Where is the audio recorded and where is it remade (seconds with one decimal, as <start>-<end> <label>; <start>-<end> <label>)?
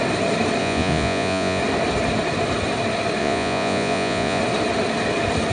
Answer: 0.0-0.6 recorded; 0.6-1.6 remade; 1.6-3.2 recorded; 3.2-4.4 remade; 4.4-5.5 recorded